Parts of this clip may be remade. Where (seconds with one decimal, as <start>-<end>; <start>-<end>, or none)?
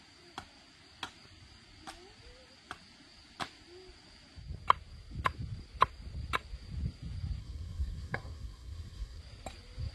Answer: 7.4-9.2